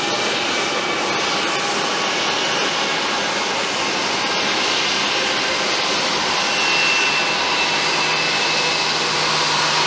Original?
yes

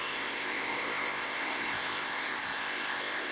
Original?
no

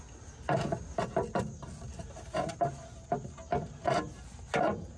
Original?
yes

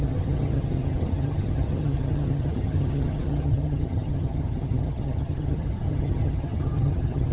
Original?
no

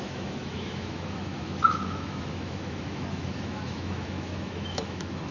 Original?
no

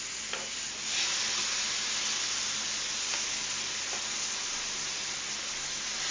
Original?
yes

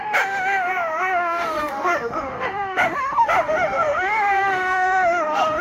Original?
no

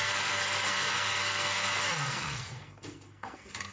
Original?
no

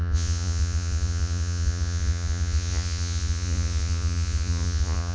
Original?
no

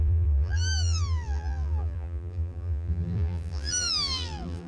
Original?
no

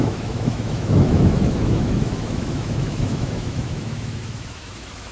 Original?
no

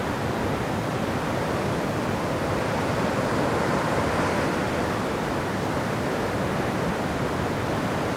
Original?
yes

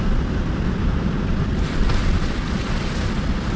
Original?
yes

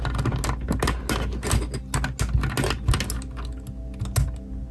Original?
yes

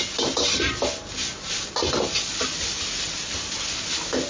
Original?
yes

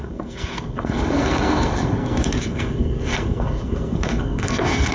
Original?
no